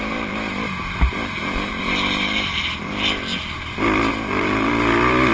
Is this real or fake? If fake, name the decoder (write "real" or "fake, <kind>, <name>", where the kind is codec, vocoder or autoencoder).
fake, vocoder, BigVGAN v2